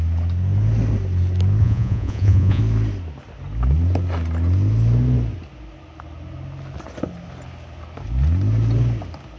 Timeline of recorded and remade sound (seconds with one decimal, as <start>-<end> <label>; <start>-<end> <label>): 0.0-1.6 recorded; 1.6-2.6 remade; 2.6-9.4 recorded